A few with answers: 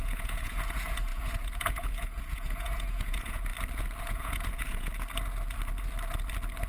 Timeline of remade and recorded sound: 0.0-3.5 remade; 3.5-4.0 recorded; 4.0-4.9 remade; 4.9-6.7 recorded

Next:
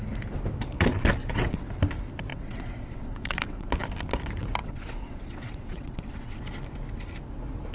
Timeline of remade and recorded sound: 0.0-1.2 recorded; 1.2-1.7 remade; 1.7-2.3 recorded; 2.3-3.7 remade; 3.7-4.6 recorded; 4.6-6.4 remade; 6.4-7.7 recorded